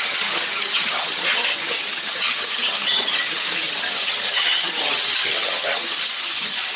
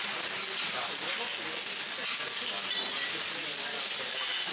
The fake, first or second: first